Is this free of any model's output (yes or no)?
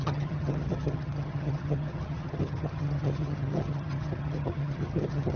no